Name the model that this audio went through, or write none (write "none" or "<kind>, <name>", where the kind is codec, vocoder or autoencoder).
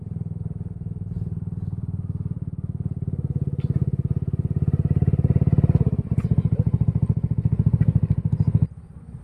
none